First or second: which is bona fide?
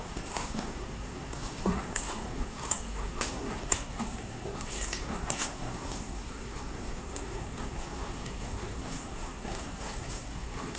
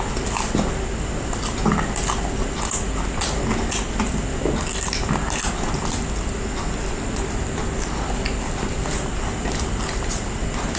second